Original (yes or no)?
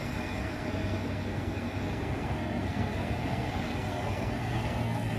no